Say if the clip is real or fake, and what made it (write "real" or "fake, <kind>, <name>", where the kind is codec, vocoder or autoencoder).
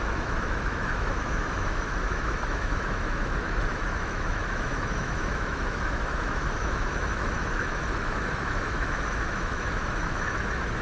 fake, autoencoder, DAC-VAE